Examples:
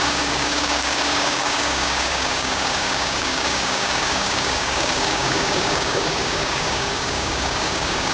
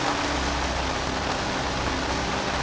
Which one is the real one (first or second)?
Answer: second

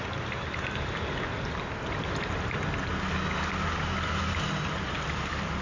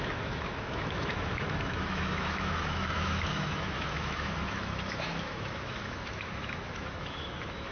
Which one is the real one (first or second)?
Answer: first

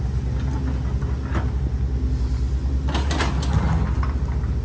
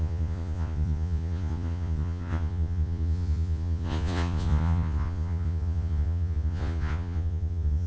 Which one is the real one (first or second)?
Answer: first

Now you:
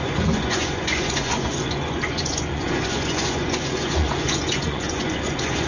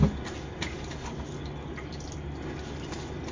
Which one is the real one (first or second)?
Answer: second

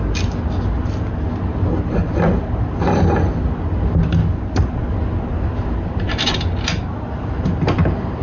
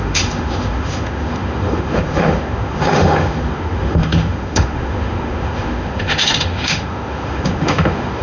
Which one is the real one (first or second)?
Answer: first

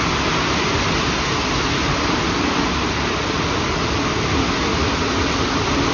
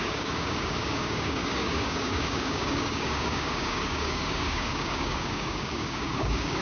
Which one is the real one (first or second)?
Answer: first